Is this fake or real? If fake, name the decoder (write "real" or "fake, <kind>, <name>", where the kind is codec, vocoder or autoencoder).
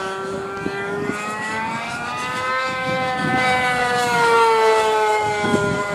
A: fake, codec, DAC